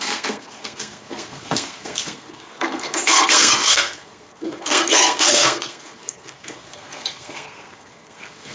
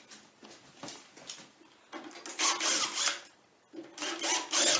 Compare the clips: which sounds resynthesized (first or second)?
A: first